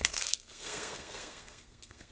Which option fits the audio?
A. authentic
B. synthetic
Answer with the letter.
B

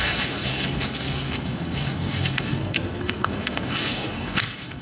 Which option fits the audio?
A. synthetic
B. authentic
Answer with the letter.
A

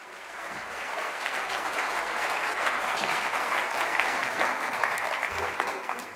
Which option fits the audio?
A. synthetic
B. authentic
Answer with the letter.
A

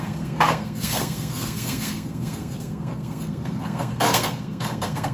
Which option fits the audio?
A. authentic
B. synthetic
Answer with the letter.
B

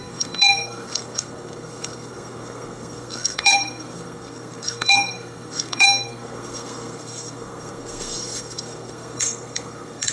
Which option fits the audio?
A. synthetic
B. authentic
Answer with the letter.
A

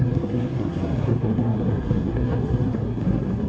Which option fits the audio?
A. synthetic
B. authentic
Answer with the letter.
A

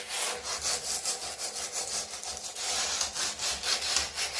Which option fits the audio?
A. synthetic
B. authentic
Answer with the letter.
B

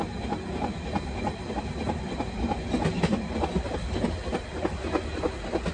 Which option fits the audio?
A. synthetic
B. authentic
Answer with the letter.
B